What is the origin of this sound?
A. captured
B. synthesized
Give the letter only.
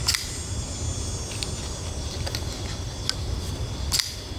A